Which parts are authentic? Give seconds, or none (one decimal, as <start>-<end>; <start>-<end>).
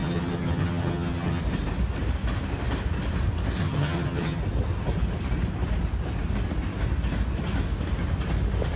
1.4-3.6; 4.4-8.8